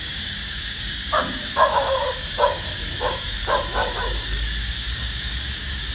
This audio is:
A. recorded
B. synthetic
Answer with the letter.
B